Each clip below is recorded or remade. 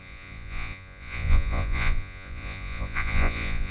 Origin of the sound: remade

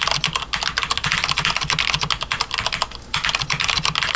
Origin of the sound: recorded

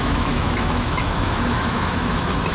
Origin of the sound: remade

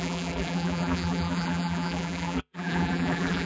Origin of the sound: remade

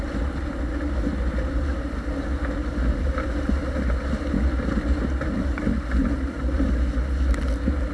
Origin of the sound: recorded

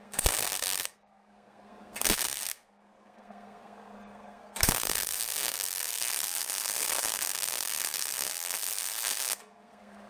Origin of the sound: remade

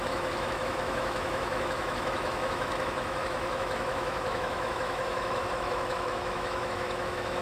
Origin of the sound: remade